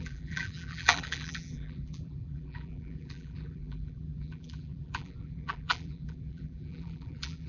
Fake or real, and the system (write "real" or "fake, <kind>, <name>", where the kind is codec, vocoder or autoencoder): fake, vocoder, BigVGAN v2